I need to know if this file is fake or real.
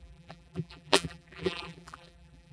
fake